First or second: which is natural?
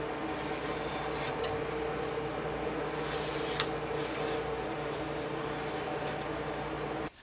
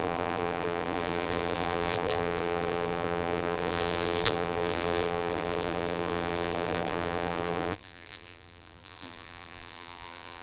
first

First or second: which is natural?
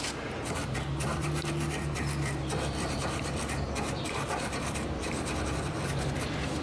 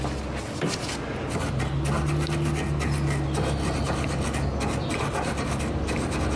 second